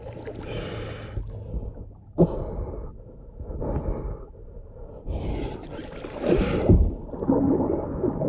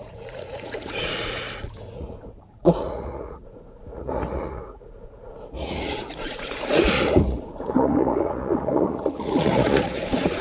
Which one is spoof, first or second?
second